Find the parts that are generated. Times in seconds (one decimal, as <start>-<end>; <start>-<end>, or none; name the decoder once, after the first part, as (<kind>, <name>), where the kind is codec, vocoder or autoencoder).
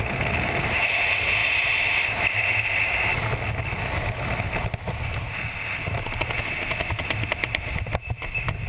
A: none